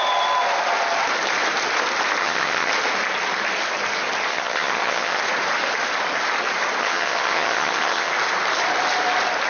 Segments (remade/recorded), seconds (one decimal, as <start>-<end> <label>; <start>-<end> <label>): 0.0-2.2 recorded; 2.2-2.7 remade; 2.7-4.3 recorded; 4.3-5.2 remade; 5.2-6.8 recorded; 6.8-8.1 remade; 8.1-9.5 recorded